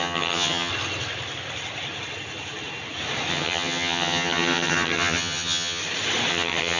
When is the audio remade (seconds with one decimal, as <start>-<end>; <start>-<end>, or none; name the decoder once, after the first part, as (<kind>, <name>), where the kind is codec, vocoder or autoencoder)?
0.0-0.7 (vocoder, HiFi-GAN); 3.3-5.8; 6.3-6.8